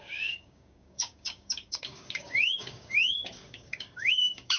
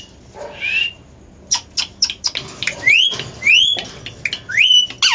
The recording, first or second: second